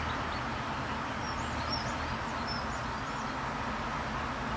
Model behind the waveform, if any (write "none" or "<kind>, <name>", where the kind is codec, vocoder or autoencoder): none